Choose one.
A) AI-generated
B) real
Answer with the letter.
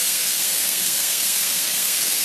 A